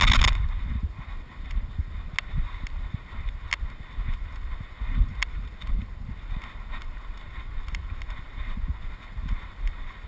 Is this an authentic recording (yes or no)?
yes